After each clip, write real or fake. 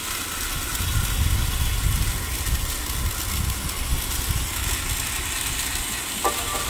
real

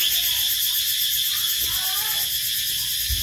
real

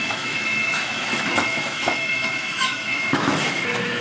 fake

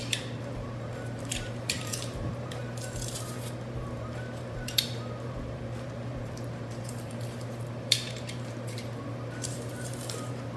fake